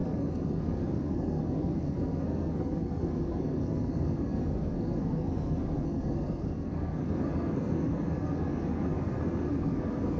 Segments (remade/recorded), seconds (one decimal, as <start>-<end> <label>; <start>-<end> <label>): 0.0-10.2 remade